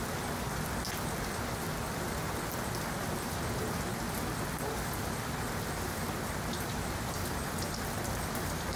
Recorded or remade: remade